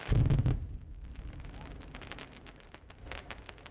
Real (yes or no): yes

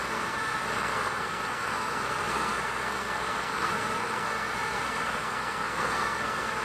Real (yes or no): no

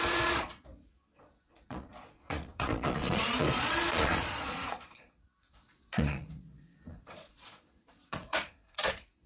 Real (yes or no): no